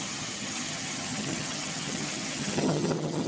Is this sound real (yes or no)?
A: no